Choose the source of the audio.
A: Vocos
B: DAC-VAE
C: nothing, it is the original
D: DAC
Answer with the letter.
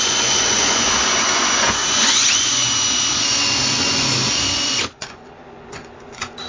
A